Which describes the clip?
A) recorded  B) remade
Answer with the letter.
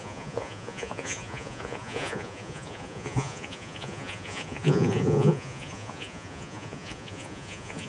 B